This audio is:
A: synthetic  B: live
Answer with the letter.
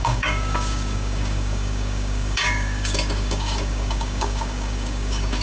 A